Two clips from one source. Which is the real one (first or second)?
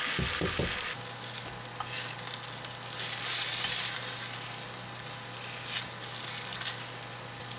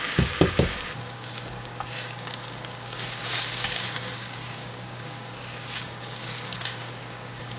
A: first